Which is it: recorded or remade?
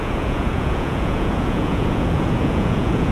remade